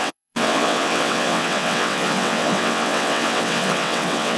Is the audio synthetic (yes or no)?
yes